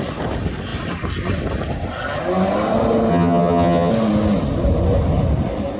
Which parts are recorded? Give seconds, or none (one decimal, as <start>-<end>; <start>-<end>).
0.0-3.1; 3.9-5.8